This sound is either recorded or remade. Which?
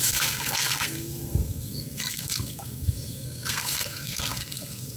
remade